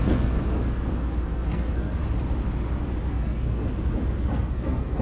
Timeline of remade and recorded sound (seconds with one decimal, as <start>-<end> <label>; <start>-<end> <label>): 0.0-2.0 remade; 2.0-3.0 recorded; 3.0-3.6 remade; 3.6-4.2 recorded; 4.2-5.0 remade